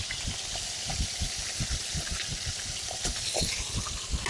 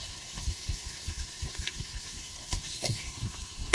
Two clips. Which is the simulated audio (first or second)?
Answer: second